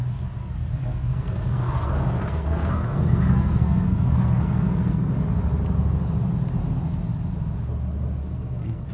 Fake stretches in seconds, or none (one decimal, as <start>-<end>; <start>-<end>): 0.4-5.1; 8.2-8.9